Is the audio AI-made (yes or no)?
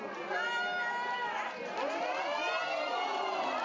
no